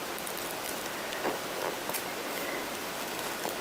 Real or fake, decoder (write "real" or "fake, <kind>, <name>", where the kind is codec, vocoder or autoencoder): real